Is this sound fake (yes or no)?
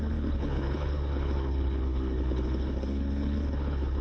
yes